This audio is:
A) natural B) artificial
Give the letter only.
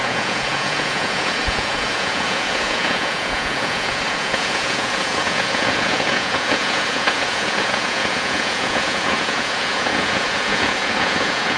B